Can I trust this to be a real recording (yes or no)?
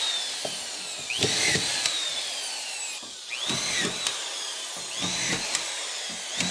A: yes